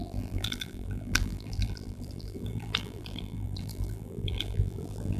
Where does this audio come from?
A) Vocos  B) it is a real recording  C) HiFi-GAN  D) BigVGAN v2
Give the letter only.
D